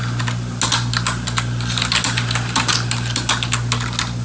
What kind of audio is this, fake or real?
real